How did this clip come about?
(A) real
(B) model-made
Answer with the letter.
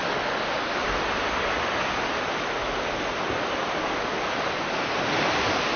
A